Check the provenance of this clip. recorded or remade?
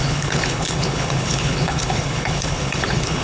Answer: remade